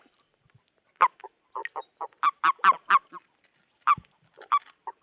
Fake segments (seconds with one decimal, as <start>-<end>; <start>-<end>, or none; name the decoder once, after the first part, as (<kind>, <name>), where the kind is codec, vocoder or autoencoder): none